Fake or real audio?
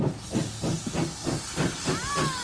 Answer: real